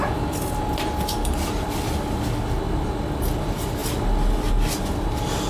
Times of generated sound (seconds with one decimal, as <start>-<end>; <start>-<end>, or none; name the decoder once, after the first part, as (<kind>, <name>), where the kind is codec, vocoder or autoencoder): none